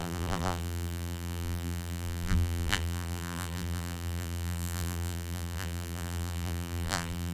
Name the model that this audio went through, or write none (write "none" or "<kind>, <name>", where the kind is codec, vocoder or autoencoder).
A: vocoder, BigVGAN v2